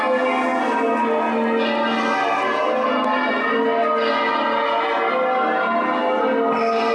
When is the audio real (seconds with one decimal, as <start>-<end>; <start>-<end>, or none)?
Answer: 0.0-6.9